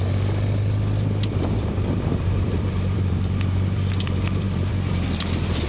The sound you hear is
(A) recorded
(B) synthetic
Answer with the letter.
B